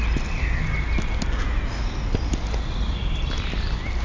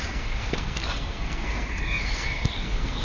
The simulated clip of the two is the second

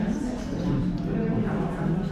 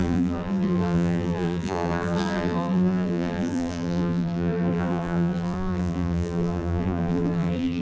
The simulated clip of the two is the second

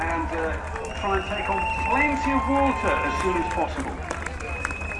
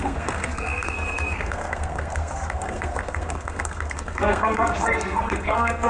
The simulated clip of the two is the second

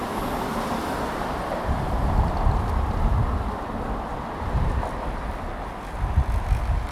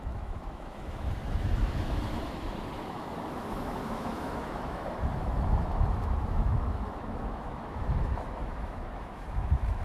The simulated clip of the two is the second